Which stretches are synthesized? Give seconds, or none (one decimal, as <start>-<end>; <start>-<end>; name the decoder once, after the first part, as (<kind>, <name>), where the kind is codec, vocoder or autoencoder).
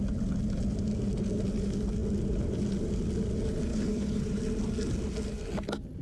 3.7-4.4 (codec, HILCodec)